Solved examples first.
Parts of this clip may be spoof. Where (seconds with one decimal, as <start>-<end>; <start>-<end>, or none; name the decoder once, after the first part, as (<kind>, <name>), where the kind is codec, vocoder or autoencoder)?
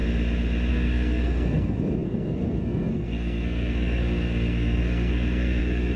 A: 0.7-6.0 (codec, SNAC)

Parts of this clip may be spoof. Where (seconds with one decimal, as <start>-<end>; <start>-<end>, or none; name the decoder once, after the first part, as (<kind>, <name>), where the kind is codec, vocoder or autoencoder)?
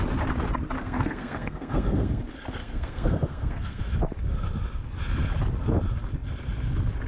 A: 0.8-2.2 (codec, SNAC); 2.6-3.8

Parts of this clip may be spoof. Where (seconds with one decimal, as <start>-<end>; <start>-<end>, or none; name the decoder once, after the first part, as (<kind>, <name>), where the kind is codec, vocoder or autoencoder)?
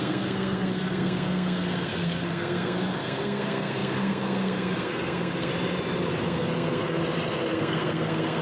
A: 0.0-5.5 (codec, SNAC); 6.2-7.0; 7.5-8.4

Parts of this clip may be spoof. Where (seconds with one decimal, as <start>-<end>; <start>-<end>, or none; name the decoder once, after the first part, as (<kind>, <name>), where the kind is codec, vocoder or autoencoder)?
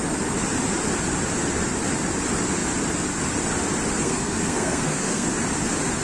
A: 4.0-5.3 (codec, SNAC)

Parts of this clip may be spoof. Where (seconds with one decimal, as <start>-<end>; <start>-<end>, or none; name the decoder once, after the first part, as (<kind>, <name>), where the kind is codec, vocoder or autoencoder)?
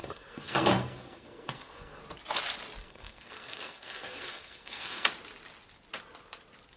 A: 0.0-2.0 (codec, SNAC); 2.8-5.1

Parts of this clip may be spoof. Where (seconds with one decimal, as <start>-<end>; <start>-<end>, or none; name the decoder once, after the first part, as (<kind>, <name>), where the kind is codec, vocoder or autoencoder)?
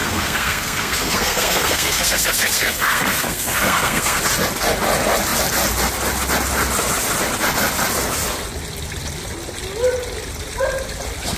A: 0.0-4.2 (codec, SNAC)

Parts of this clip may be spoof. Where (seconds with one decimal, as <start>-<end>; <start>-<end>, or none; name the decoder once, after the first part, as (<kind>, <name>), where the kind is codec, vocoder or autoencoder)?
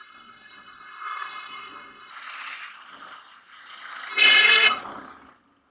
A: 0.0-2.1 (codec, SNAC); 4.1-4.8